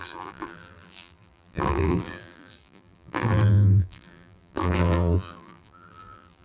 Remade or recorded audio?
remade